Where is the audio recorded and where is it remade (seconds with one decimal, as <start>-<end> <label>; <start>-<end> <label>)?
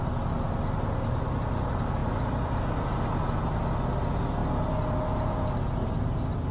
0.0-6.5 recorded